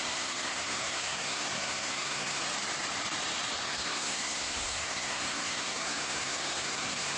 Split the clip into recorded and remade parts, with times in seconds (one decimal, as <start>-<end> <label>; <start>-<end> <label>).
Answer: 0.0-2.4 remade; 2.4-3.6 recorded; 3.6-7.2 remade